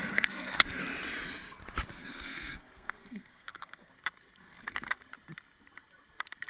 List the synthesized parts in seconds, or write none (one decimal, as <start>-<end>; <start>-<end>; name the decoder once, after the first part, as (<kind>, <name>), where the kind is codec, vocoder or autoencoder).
0.0-0.8 (codec, SNAC); 2.0-3.9; 4.4-4.9